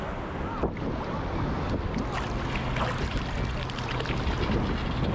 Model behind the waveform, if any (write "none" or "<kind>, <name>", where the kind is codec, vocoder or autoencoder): none